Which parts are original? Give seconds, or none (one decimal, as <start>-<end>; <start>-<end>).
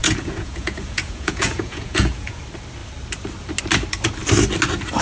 2.4-5.0